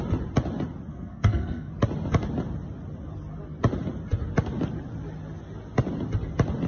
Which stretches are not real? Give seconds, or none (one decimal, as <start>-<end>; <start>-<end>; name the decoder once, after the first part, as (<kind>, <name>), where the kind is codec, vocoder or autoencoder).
0.9-1.7 (codec, SNAC)